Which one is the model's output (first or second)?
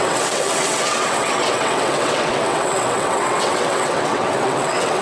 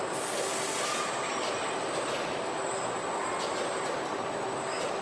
first